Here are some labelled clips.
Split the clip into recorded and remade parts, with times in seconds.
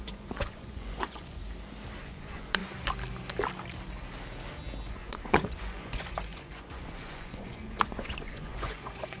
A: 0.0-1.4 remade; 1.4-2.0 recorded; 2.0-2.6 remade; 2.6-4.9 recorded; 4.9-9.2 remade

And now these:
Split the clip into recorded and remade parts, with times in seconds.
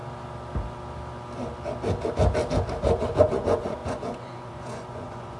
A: 0.0-3.2 recorded; 3.2-5.4 remade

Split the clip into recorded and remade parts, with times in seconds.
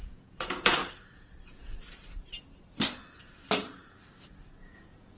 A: 0.0-0.8 remade; 0.8-1.5 recorded; 1.5-2.0 remade; 2.0-4.6 recorded; 4.6-5.2 remade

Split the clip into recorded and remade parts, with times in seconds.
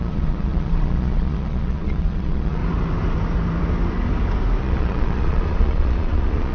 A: 0.0-2.6 remade; 2.6-4.6 recorded; 4.6-6.5 remade